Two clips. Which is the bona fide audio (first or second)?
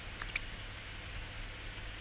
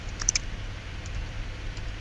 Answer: first